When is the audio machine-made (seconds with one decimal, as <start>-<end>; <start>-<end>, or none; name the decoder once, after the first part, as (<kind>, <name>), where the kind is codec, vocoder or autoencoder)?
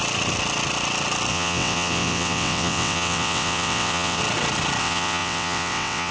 1.3-4.2 (vocoder, WaveNeXt); 4.8-6.1